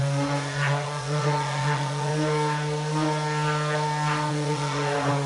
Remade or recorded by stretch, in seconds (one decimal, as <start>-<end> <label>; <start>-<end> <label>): 0.0-2.1 remade; 2.1-4.3 recorded; 4.3-5.3 remade

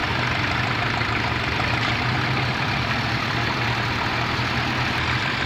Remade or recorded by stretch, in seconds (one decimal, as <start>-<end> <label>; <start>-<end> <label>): 0.0-1.7 recorded; 1.7-5.5 remade

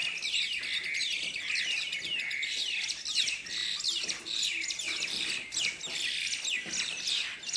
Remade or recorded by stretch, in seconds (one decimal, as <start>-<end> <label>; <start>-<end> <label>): 0.0-7.6 recorded